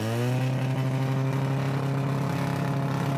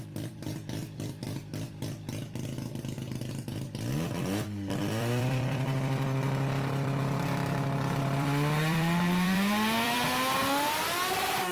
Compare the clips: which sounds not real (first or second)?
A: second